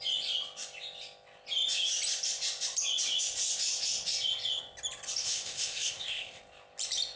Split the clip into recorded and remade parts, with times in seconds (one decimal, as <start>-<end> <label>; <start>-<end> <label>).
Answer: 0.0-5.2 recorded; 5.2-6.4 remade; 6.4-7.2 recorded

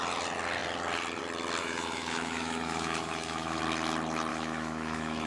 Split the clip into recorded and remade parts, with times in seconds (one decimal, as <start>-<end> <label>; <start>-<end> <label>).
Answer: 0.0-1.6 recorded; 1.6-3.6 remade; 3.6-4.3 recorded; 4.3-5.3 remade

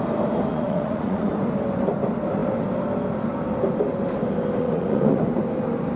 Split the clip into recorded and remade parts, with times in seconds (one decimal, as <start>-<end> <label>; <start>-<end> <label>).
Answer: 0.0-0.5 recorded; 0.5-1.3 remade; 1.3-4.6 recorded; 4.6-5.2 remade; 5.2-6.0 recorded